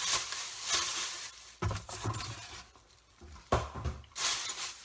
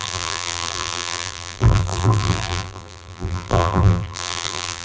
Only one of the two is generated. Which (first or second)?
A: second